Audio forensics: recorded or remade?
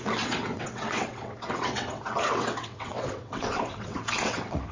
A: remade